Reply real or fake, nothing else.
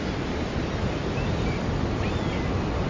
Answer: real